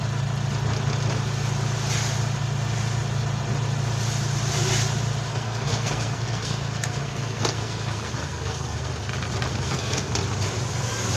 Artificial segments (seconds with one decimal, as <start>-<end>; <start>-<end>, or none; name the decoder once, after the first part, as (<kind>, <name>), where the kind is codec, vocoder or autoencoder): 5.3-8.9 (codec, SNAC); 9.5-10.1